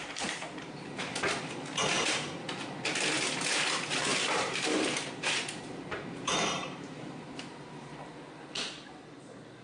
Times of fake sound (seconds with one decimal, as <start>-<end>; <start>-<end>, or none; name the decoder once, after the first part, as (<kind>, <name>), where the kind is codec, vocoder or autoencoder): 0.0-1.0 (vocoder, BigVGAN v2); 4.1-7.4